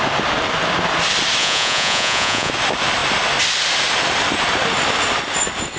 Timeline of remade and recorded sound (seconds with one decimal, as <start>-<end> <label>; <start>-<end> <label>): 0.0-1.4 recorded; 1.4-2.5 remade; 2.5-5.8 recorded